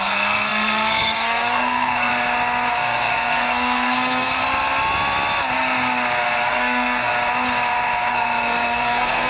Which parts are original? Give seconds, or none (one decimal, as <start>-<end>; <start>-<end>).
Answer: 2.1-2.7; 4.4-6.5; 7.1-8.1